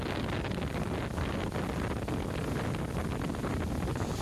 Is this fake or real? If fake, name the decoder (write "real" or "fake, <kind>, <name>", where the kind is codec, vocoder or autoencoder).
real